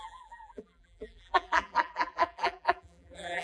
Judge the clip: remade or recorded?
remade